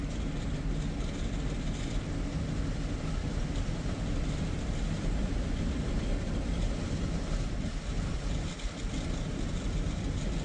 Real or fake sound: real